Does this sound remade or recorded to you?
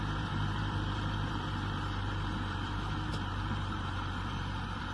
remade